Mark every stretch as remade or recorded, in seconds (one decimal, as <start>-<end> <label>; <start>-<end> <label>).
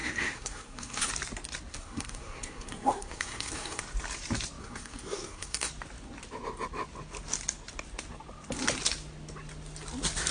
0.0-1.1 remade; 1.1-1.7 recorded; 1.7-3.8 remade; 3.8-4.6 recorded; 4.6-5.7 remade; 5.7-10.3 recorded